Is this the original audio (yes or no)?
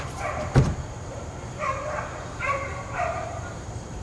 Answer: no